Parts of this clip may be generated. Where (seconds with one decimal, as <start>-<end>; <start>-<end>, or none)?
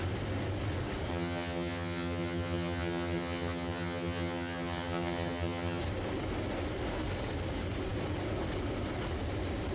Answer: 1.1-5.8